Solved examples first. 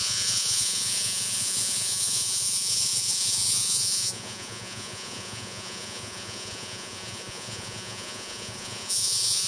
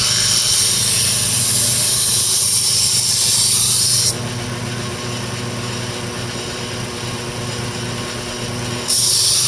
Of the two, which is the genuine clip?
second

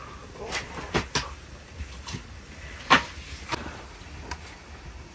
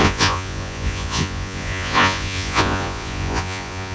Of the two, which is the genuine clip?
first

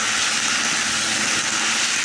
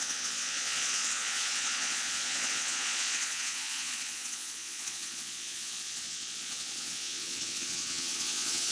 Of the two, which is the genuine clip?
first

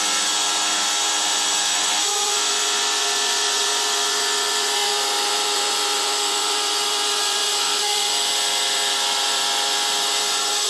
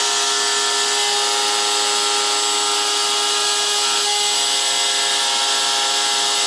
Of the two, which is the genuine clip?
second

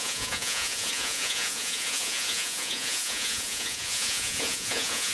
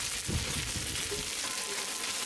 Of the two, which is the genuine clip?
second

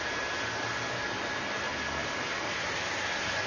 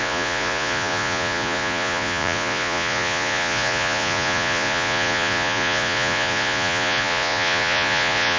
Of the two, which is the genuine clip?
first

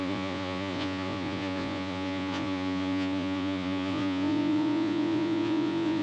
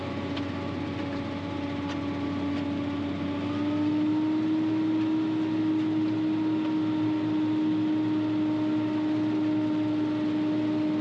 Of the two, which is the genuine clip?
second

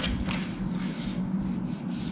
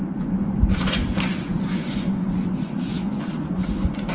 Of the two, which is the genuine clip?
first